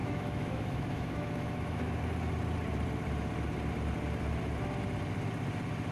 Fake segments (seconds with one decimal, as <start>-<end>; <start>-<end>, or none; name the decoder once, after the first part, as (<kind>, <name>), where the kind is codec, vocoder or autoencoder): 0.0-2.0 (autoencoder, DAC-VAE)